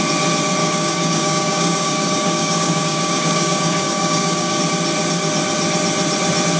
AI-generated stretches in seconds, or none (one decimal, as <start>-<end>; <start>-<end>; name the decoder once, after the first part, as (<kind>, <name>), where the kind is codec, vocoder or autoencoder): 0.6-4.6 (codec, DAC)